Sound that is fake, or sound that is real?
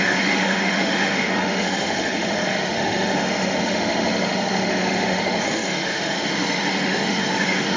fake